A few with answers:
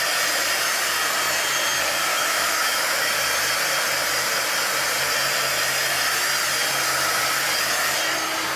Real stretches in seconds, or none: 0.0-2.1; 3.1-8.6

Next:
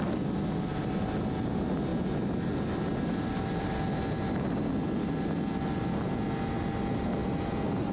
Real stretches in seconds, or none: 0.0-7.9

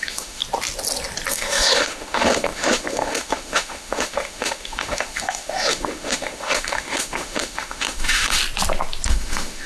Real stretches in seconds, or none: 0.4-1.3; 8.4-9.1

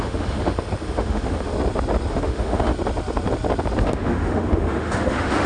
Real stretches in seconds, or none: 1.5-2.1; 2.7-3.8